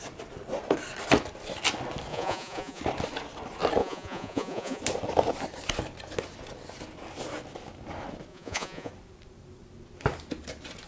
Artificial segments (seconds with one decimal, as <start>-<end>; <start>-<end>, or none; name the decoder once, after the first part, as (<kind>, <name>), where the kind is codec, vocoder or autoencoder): 2.1-2.8 (vocoder, Vocos); 3.8-4.8; 8.3-8.9